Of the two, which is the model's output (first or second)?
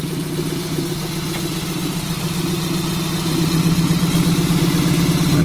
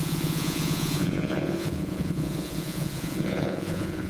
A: second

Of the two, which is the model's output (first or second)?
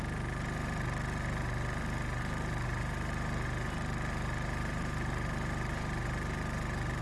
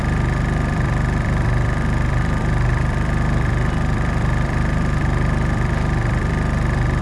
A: second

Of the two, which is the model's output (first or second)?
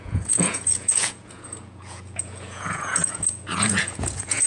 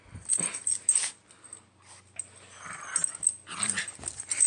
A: first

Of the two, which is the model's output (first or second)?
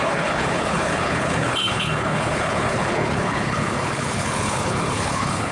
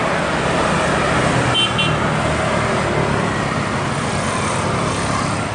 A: first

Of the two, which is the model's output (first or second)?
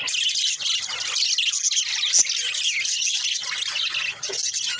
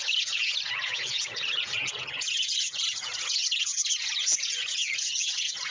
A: second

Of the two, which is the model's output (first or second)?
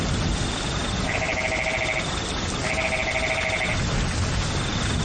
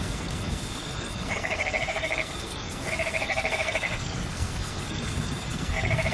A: second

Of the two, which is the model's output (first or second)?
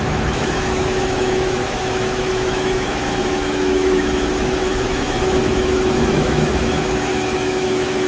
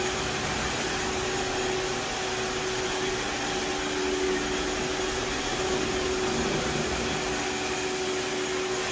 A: first